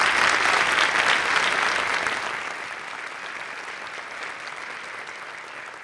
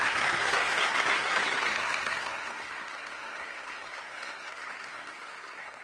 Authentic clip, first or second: first